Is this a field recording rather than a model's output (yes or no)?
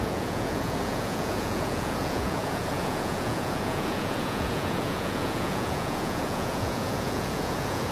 no